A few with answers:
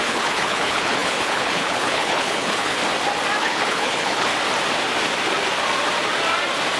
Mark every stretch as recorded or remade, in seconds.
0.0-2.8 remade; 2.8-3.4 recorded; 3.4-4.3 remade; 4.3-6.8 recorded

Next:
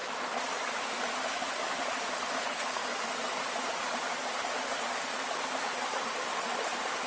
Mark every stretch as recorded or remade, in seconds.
0.0-2.4 recorded; 2.4-2.8 remade; 2.8-7.1 recorded

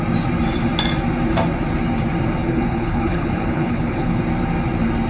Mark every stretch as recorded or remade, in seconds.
0.0-2.4 recorded; 2.4-4.2 remade; 4.2-5.1 recorded

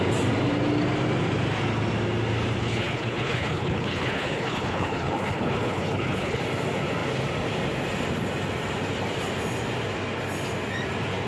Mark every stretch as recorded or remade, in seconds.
0.0-2.6 recorded; 2.6-6.4 remade; 6.4-11.3 recorded

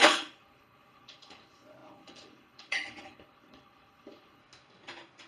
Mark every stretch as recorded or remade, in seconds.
0.0-4.4 remade; 4.4-5.3 recorded

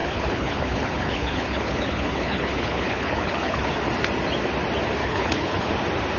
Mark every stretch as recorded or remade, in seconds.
0.0-3.7 remade; 3.7-5.0 recorded; 5.0-5.7 remade; 5.7-6.2 recorded

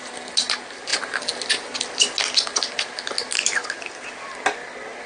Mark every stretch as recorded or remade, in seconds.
0.0-5.1 recorded

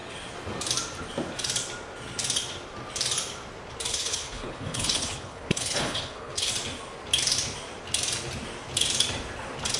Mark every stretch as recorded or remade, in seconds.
0.0-3.9 recorded; 3.9-6.5 remade; 6.5-9.8 recorded